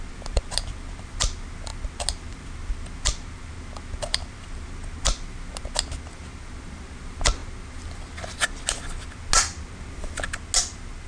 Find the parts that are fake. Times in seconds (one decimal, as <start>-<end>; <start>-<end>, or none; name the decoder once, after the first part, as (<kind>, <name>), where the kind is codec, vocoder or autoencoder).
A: none